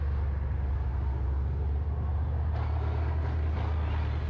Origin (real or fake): real